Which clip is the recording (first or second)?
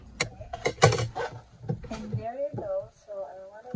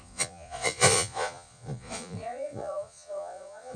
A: first